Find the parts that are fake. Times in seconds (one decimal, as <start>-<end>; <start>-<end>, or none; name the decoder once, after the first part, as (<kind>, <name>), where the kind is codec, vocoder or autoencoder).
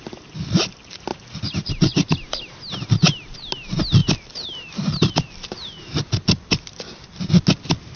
4.0-7.3 (vocoder, BigVGAN v2)